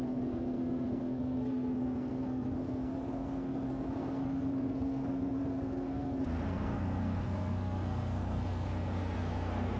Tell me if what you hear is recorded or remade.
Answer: remade